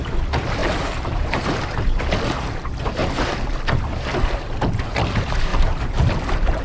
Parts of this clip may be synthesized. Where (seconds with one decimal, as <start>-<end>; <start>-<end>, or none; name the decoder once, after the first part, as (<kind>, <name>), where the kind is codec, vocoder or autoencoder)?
0.6-2.0 (vocoder, BigVGAN v2); 3.0-3.8; 5.5-6.6

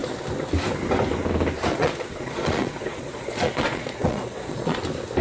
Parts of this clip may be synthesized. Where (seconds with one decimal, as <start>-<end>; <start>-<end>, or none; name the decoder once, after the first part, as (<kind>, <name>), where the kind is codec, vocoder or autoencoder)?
1.7-4.8 (vocoder, Vocos)

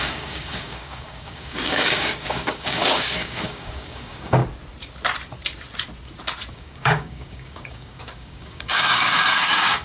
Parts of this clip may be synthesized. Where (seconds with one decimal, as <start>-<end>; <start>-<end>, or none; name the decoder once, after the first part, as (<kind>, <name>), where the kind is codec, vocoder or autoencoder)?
0.0-4.4 (codec, DAC); 6.5-9.8

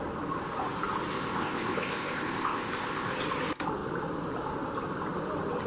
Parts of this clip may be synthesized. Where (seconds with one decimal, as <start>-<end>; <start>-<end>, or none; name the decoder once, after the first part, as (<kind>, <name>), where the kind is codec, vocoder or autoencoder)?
1.1-3.1 (codec, ZipCodec)

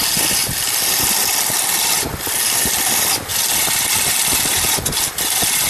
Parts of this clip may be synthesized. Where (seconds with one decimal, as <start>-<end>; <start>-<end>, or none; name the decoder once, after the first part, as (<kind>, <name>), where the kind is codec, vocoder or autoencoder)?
none